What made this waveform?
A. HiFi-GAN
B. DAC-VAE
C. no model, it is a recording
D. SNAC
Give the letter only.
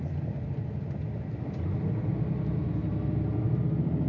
C